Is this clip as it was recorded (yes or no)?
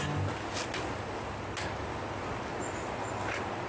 yes